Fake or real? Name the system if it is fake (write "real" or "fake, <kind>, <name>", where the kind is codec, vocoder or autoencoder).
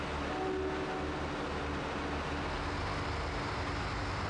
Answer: real